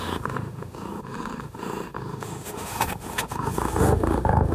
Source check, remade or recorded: remade